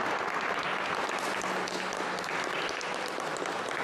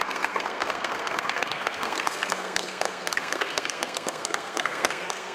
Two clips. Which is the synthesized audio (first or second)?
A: second